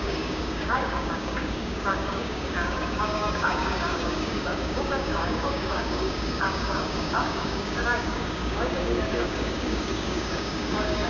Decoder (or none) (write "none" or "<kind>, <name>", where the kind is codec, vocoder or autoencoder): codec, DAC